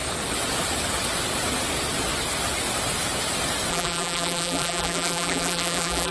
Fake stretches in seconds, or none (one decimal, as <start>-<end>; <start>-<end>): 3.7-6.1